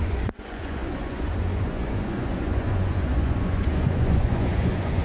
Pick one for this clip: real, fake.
fake